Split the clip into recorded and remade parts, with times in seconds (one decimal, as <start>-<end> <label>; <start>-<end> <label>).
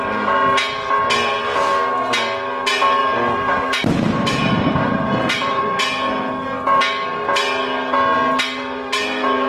0.0-3.0 recorded; 3.0-5.6 remade; 5.6-9.5 recorded